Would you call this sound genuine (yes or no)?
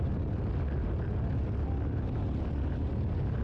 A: yes